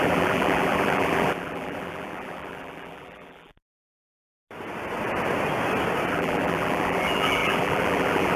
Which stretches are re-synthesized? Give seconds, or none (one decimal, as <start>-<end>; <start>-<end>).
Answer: 0.0-3.7; 6.1-8.4

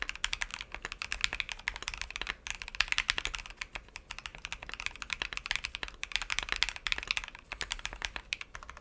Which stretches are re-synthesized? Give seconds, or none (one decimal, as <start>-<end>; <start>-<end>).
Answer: 1.8-2.3; 4.3-8.8

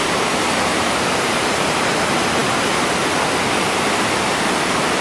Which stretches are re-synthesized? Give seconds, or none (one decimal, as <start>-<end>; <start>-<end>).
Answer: 0.7-1.4

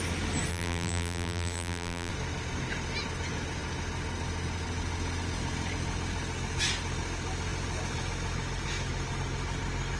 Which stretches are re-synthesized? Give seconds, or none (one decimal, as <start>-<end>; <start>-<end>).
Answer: 0.5-2.1

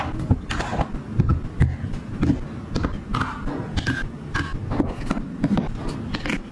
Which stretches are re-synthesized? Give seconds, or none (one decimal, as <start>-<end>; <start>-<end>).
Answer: none

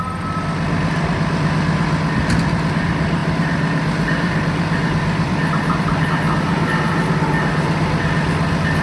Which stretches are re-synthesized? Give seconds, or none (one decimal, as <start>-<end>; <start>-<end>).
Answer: 3.2-6.0